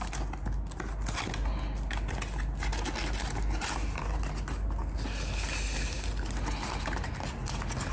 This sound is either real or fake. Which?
real